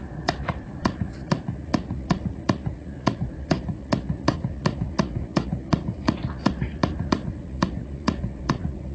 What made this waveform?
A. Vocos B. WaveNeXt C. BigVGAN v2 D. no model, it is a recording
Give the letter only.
A